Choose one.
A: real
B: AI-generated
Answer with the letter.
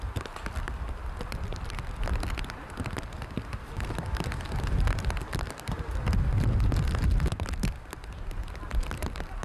A